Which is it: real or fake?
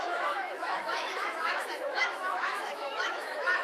fake